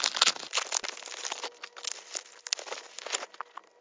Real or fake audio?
real